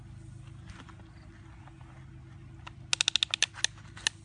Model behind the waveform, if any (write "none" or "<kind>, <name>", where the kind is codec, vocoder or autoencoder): none